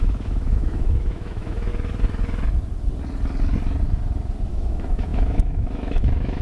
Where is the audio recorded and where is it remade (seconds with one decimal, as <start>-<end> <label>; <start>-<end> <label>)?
0.0-1.7 remade; 1.7-4.5 recorded; 4.5-6.4 remade